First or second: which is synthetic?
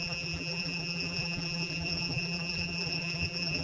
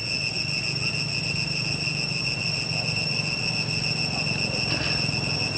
first